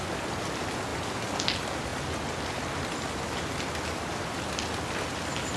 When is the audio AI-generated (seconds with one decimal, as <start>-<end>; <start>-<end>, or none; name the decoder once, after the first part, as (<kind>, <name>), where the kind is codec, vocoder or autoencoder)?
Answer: none

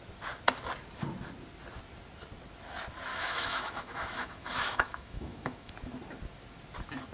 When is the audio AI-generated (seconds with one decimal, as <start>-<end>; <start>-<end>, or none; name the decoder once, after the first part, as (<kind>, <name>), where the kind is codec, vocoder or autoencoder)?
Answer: 3.1-5.7 (autoencoder, DAC-VAE)

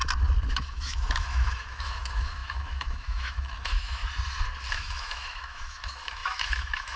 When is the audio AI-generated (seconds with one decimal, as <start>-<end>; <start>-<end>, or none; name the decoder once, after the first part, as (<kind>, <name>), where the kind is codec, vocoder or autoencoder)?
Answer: 0.5-4.0 (autoencoder, DAC-VAE); 4.7-7.0

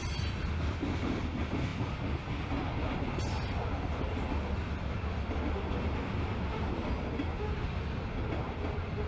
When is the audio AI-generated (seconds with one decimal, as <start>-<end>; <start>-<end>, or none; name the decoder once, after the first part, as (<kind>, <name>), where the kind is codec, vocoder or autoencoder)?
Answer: none

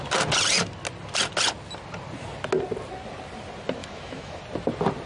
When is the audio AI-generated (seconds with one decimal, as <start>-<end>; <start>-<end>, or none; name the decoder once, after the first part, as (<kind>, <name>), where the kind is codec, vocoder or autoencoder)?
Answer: 3.8-4.4 (autoencoder, DAC-VAE)

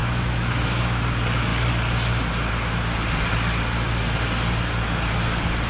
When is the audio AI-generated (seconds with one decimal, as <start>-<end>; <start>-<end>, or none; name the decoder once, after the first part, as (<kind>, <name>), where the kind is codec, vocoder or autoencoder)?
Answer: 0.0-1.0 (autoencoder, DAC-VAE)

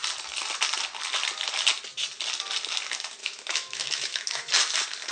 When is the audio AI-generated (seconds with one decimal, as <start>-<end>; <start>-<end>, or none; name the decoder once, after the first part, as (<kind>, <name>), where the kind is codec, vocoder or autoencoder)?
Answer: 3.2-4.5 (autoencoder, DAC-VAE)